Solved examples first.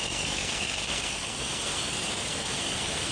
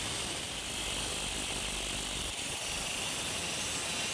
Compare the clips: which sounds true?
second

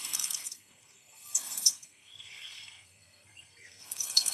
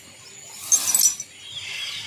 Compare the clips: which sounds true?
second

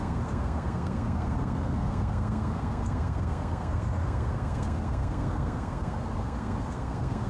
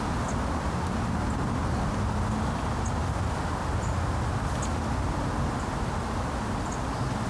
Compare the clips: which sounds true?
second